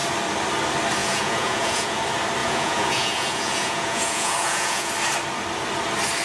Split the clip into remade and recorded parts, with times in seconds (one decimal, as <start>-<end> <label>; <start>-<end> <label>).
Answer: 0.0-1.0 recorded; 1.0-2.0 remade; 2.0-2.4 recorded; 2.4-4.9 remade; 4.9-6.2 recorded